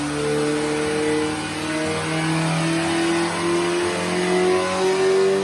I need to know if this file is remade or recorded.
recorded